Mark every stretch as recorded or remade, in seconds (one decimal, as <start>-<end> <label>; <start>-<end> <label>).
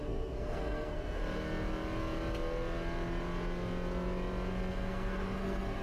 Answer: 0.0-1.2 remade; 1.2-4.7 recorded; 4.7-5.8 remade